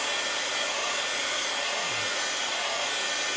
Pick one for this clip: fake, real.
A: real